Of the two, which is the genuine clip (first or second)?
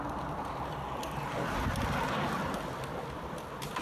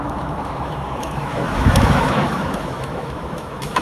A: first